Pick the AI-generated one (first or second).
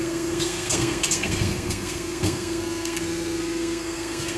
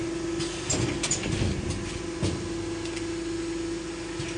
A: first